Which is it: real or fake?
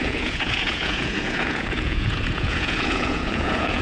fake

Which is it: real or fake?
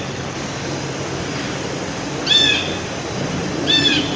fake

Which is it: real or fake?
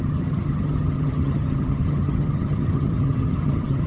fake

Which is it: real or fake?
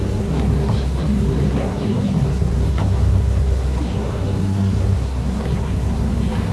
fake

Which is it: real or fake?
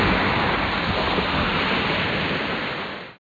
real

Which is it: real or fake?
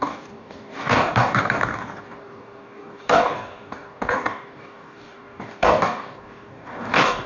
fake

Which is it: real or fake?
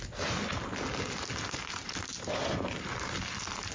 real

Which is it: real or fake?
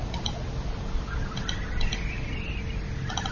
real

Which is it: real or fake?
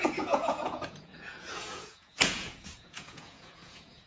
fake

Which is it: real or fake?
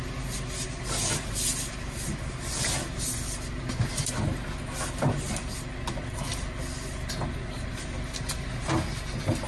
real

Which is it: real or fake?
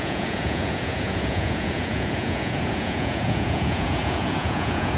fake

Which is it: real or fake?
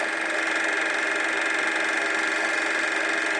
real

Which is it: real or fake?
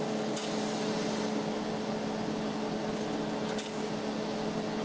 real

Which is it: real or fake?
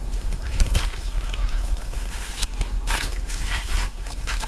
fake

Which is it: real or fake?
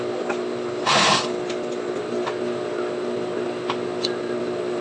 real